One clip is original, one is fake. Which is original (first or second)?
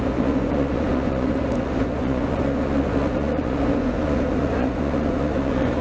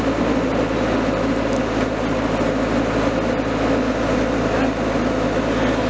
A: second